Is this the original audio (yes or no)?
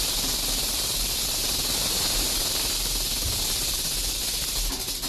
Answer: no